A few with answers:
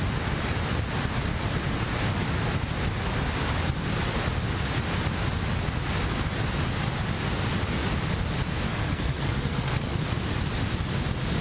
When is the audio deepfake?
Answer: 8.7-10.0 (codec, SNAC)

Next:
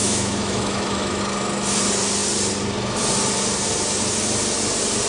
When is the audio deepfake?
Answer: 0.0-1.2 (autoencoder, DAC-VAE)

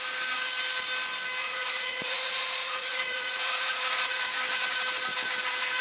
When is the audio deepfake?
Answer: 1.4-4.2 (vocoder, Vocos)

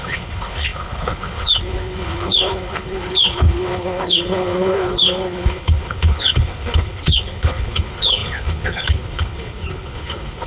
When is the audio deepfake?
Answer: 0.0-10.5 (codec, HILCodec)

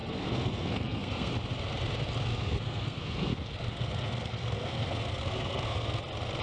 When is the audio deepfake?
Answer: 0.0-1.3 (codec, SNAC); 2.3-6.0

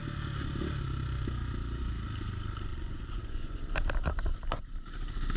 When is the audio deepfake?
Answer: 2.7-3.6 (vocoder, Vocos)